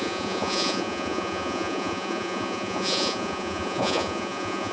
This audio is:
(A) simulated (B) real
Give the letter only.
A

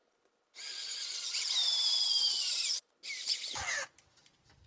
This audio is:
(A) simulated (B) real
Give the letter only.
B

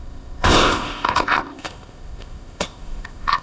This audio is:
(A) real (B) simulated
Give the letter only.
B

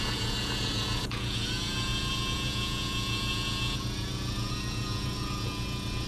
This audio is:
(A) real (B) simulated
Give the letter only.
B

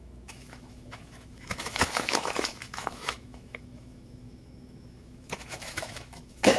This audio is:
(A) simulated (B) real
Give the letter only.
A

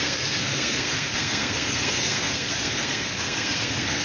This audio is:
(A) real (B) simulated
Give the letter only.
B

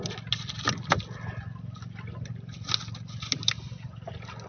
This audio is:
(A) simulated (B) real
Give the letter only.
B